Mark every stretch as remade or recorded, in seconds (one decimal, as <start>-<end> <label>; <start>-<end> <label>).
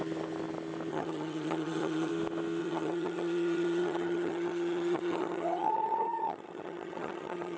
0.0-0.9 recorded; 0.9-2.1 remade; 2.1-2.6 recorded; 2.6-7.6 remade